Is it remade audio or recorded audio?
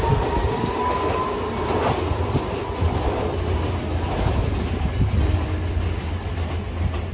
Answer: recorded